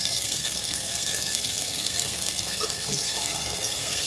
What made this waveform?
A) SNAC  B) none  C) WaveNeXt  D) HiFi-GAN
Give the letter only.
A